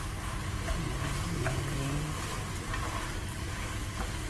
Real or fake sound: real